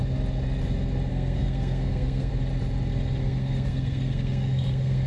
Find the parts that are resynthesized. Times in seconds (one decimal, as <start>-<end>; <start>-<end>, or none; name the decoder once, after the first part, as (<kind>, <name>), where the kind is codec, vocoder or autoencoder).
1.1-2.3 (codec, SNAC); 3.2-5.1